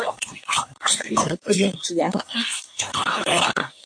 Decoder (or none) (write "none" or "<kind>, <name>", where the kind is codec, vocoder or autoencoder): codec, SNAC